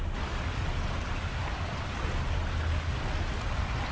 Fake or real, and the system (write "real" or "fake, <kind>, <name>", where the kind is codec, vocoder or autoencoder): real